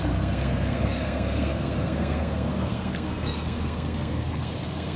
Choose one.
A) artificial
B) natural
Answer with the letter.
A